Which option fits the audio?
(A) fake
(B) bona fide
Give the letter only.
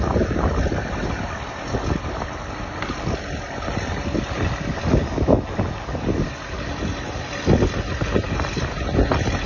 B